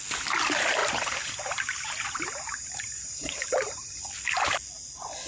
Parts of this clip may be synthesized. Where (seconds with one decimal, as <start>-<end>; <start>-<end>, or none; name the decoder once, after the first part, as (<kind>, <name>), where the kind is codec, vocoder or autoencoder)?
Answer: 0.8-4.0 (vocoder, BigVGAN v2)